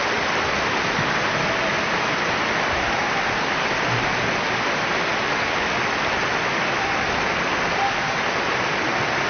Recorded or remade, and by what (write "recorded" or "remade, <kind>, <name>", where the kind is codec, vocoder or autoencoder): recorded